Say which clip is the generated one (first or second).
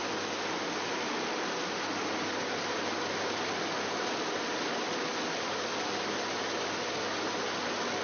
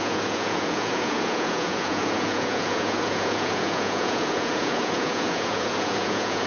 second